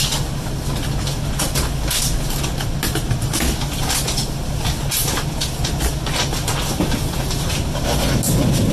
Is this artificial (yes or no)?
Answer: no